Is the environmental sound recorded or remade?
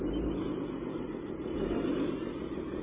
recorded